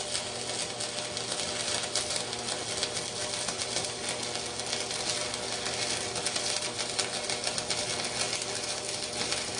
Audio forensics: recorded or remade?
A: recorded